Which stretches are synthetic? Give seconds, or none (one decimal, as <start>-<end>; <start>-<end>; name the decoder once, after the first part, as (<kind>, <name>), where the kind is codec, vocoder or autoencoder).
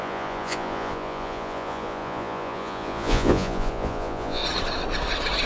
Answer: 0.0-4.4 (vocoder, Vocos)